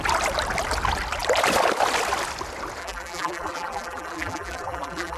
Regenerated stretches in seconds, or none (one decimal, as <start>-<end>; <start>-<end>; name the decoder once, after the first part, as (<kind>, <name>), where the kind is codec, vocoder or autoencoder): 2.8-5.2 (vocoder, BigVGAN v2)